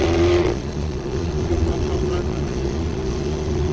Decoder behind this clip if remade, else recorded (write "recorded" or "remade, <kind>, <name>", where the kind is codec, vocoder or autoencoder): remade, vocoder, Vocos